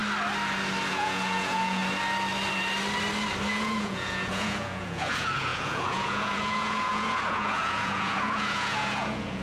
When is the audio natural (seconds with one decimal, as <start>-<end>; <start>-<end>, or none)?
0.0-0.9; 1.8-3.5